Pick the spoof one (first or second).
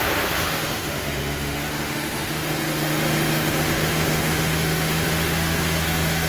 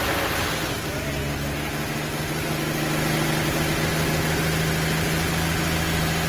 first